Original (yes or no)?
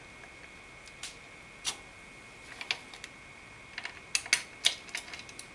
yes